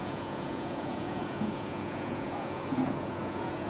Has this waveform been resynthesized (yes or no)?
yes